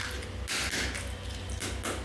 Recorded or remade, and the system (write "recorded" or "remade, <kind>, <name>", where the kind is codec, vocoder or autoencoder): recorded